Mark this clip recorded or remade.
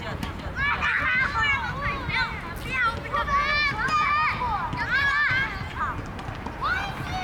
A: recorded